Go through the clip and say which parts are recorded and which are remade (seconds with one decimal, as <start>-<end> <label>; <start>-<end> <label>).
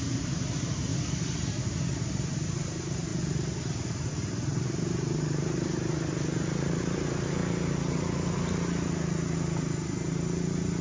0.0-0.9 remade; 0.9-1.5 recorded; 1.5-3.1 remade; 3.1-4.1 recorded; 4.1-7.4 remade; 7.4-10.8 recorded